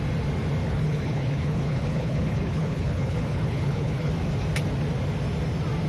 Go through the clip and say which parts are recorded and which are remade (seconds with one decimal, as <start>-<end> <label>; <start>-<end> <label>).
0.0-0.6 recorded; 0.6-4.1 remade; 4.1-5.9 recorded